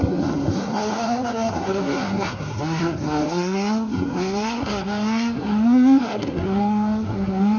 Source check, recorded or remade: remade